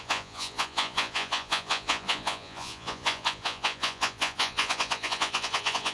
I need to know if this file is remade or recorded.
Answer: remade